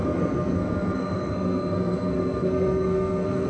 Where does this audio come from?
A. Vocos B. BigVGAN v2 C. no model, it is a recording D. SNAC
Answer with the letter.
D